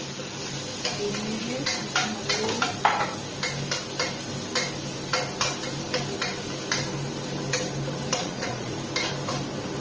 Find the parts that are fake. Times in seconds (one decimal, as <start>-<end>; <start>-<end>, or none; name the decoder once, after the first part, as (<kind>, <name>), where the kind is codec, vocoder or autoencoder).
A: 8.1-8.7 (vocoder, Vocos)